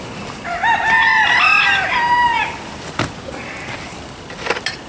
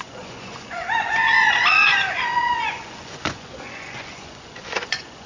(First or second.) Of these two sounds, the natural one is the first